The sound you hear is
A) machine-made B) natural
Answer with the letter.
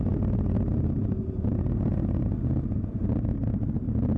B